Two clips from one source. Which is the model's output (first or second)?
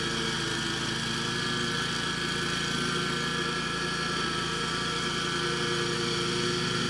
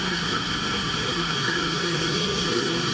second